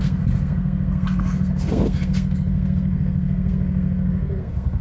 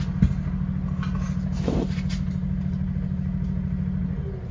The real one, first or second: second